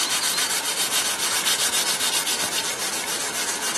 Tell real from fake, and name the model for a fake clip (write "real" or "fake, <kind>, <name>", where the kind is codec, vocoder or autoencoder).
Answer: real